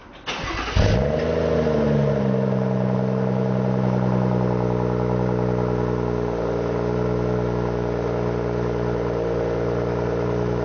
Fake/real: real